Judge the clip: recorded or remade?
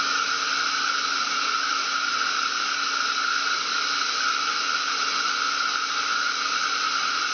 recorded